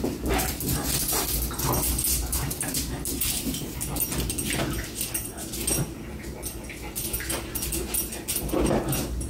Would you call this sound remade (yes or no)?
no